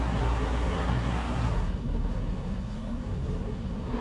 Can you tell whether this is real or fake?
fake